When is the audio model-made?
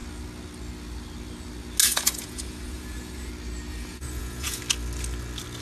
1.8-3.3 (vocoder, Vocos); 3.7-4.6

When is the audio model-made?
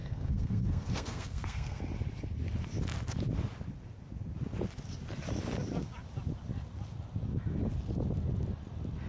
0.0-1.8 (codec, SNAC)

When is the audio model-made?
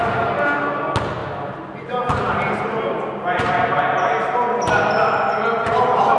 none